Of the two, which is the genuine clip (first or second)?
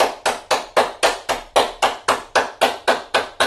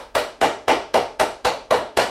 first